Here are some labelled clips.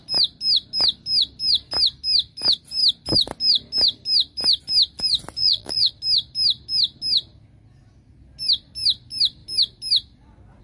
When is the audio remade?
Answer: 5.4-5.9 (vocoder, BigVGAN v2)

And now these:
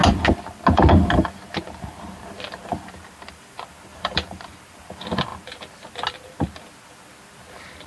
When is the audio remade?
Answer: 3.9-4.5 (vocoder, BigVGAN v2)

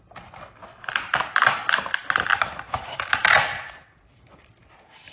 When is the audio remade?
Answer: 2.3-4.3 (vocoder, BigVGAN v2)

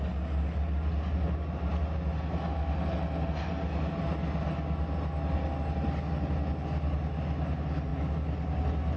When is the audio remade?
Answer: none

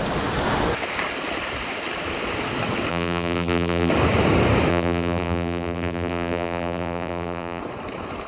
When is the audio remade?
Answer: 2.9-3.9 (vocoder, BigVGAN v2); 4.7-7.6

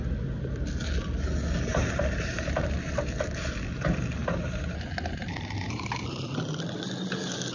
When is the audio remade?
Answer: 1.7-3.3 (vocoder, BigVGAN v2); 4.2-4.7; 5.2-6.3